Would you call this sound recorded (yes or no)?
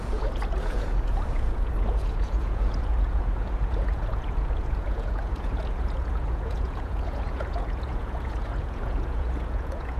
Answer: no